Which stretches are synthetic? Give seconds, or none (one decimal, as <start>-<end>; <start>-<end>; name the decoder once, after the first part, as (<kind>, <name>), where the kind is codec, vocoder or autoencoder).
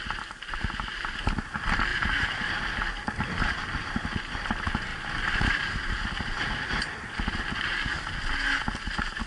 1.9-2.5 (vocoder, BigVGAN v2); 4.9-6.8